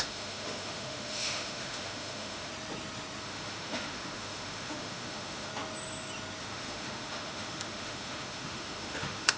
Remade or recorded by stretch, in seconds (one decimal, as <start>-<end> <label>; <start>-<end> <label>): 0.0-2.5 remade; 2.5-3.2 recorded; 3.2-5.5 remade; 5.5-6.4 recorded; 6.4-9.4 remade